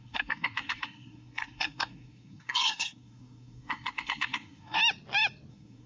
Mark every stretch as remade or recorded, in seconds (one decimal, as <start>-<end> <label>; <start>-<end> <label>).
0.0-4.8 remade; 4.8-5.5 recorded; 5.5-5.9 remade